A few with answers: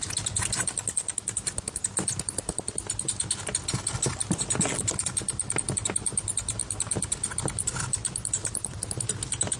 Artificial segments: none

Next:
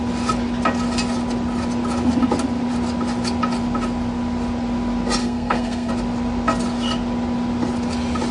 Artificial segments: 5.2-5.9 (codec, SNAC)